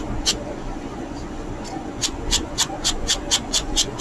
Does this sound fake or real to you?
fake